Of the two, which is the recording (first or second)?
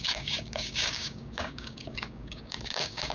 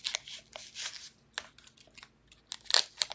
second